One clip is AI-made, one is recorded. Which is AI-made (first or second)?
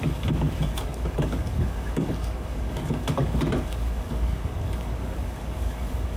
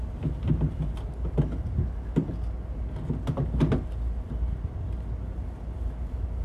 first